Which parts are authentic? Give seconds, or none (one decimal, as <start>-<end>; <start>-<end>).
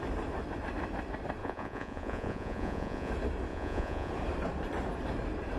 0.0-1.4; 3.1-3.5; 4.1-5.6